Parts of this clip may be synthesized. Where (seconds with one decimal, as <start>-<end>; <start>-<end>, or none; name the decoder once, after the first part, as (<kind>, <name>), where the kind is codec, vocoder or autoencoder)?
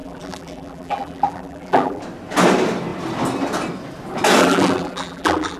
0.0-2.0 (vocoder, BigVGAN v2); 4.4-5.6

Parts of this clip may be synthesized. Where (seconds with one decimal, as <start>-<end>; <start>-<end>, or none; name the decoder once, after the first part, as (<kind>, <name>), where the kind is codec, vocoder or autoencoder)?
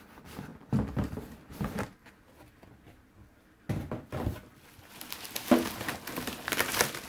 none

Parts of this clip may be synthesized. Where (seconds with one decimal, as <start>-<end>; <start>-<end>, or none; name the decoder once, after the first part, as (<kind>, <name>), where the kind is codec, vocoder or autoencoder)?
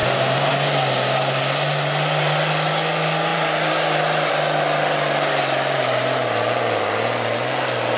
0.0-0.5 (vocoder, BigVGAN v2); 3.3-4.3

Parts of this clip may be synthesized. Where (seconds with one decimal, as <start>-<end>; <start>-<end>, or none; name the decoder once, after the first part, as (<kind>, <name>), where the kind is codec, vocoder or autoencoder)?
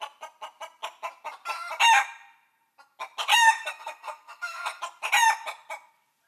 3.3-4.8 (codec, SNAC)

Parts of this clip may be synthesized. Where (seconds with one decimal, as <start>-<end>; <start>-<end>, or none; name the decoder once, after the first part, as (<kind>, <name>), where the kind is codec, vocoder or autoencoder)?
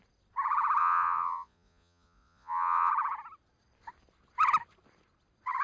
0.8-2.9 (vocoder, Vocos)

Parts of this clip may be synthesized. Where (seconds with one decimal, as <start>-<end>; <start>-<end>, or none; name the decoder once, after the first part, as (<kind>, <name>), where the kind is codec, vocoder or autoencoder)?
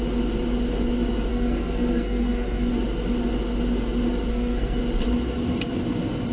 1.3-2.7 (codec, SNAC); 4.3-4.8